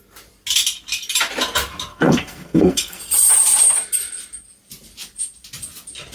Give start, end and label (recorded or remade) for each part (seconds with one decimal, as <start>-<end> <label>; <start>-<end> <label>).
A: 0.0-1.9 recorded; 1.9-3.0 remade; 3.0-6.1 recorded